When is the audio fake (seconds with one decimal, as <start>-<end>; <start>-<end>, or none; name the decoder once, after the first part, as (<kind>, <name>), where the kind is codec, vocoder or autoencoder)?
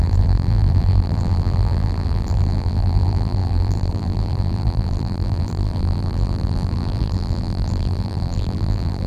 0.0-9.1 (vocoder, BigVGAN v2)